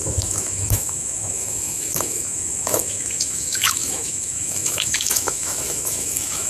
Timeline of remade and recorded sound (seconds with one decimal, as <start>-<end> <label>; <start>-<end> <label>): 0.0-6.5 remade